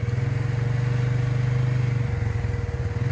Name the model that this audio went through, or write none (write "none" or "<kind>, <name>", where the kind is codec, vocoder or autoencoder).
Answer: none